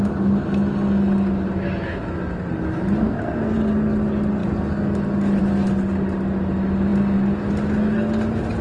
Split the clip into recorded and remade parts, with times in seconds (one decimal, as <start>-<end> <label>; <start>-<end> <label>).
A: 0.0-3.0 recorded; 3.0-3.5 remade; 3.5-8.6 recorded